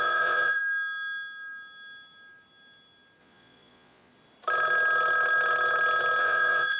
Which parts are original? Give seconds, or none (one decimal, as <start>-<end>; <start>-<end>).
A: 0.6-3.2; 4.1-6.2